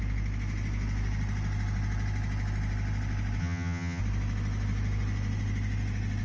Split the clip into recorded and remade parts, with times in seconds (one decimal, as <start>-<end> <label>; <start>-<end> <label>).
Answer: 0.0-3.4 recorded; 3.4-4.0 remade; 4.0-6.2 recorded